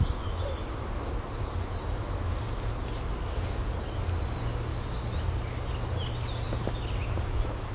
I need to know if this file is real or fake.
real